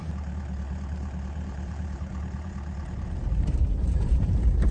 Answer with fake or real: fake